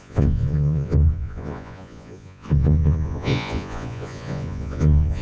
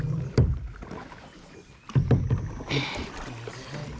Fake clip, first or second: first